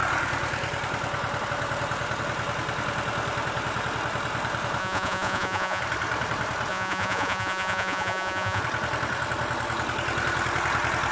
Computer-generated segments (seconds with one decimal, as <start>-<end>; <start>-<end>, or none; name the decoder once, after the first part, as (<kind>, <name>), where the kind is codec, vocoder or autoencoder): 4.8-5.8 (vocoder, Vocos); 6.7-8.6